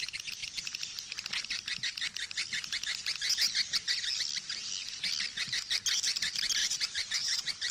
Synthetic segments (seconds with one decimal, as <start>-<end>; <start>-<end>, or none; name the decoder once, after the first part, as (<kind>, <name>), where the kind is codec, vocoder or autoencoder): 6.6-7.7 (vocoder, BigVGAN v2)